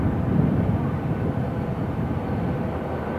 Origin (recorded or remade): recorded